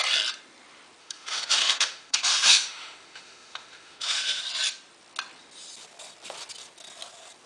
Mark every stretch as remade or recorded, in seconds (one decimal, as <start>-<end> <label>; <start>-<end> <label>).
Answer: 0.0-1.0 recorded; 1.0-4.4 remade; 4.4-7.5 recorded